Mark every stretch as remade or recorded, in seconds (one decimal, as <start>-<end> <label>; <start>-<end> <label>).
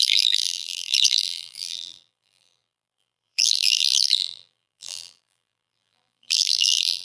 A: 0.0-7.0 remade